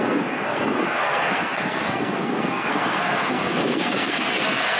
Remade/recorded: remade